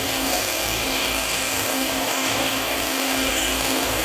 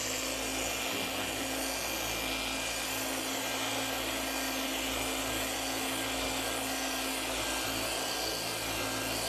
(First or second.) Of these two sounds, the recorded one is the second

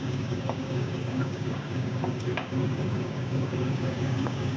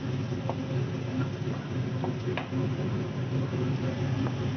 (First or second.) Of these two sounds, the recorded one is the second